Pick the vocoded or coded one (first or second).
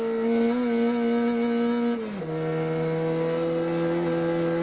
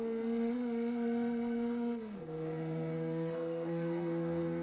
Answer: second